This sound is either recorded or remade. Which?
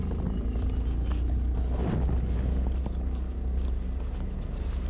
recorded